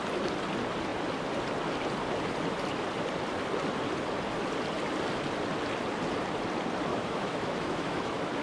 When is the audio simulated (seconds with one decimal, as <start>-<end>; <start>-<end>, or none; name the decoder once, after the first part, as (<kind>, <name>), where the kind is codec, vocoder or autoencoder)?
6.9-8.4 (autoencoder, DAC-VAE)